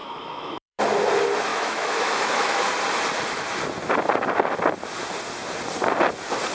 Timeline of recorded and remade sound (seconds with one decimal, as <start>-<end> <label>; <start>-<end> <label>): 0.0-0.8 remade; 0.8-1.5 recorded; 1.5-2.6 remade; 2.6-6.5 recorded